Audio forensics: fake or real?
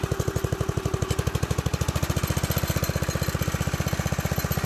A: real